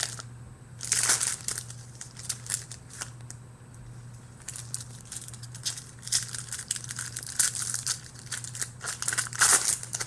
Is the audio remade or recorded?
recorded